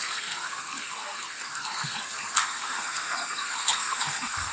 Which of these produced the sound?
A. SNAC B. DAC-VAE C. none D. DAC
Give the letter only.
A